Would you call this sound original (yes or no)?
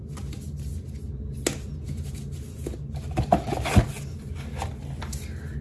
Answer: yes